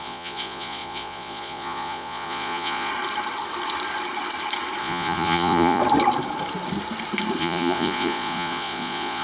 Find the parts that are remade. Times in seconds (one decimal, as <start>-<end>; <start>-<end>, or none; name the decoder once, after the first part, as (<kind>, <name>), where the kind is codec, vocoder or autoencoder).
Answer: 0.0-2.9 (vocoder, Vocos); 4.8-5.8; 7.4-9.2

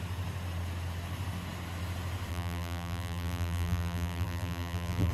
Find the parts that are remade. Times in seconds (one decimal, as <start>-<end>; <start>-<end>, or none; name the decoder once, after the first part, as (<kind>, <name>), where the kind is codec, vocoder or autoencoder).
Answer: 2.3-5.1 (vocoder, BigVGAN v2)

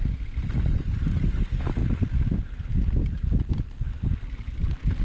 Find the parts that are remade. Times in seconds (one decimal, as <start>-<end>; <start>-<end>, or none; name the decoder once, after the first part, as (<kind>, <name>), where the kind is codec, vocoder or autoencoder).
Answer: none